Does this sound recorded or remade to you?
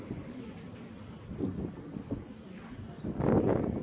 recorded